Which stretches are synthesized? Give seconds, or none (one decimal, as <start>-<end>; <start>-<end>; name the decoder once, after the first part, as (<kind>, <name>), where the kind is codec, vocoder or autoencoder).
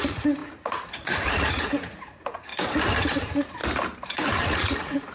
0.0-2.5 (vocoder, Vocos); 3.0-3.6; 4.4-5.1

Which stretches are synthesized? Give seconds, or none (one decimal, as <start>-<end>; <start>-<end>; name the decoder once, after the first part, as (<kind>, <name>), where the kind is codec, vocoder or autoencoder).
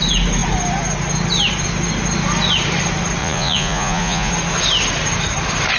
3.2-4.3 (vocoder, Vocos)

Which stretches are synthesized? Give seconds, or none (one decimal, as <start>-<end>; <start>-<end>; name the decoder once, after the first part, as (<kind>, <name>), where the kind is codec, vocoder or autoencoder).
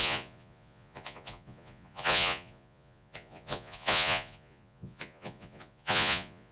0.0-6.5 (vocoder, Vocos)